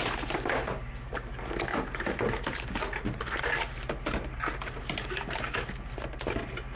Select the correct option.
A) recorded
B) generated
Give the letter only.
A